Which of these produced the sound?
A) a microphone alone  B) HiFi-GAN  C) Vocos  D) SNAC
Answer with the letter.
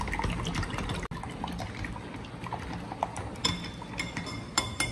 A